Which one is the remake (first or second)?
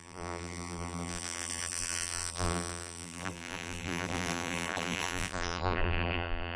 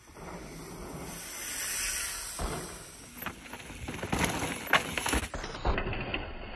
first